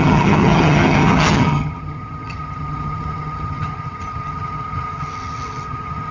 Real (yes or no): no